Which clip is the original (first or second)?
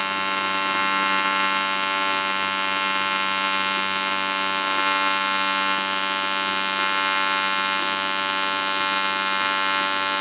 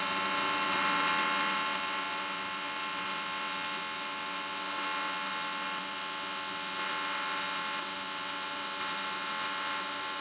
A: first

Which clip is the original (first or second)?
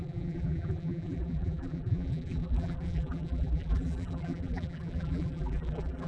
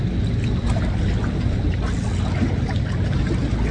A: second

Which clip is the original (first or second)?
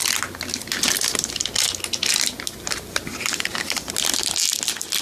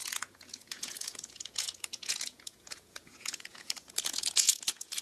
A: first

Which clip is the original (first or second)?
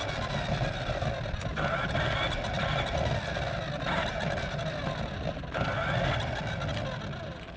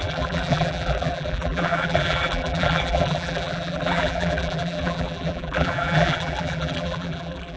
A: first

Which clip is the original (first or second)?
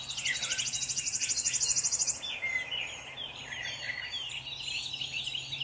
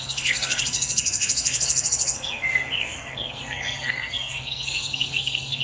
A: first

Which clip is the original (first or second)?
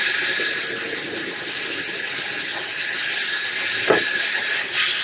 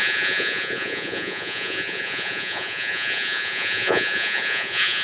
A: first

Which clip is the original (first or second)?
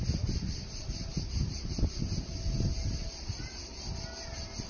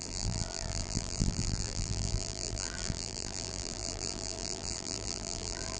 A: first